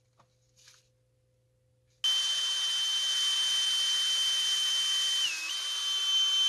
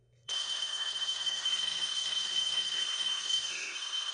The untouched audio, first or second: first